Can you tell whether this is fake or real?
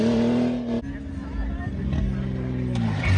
real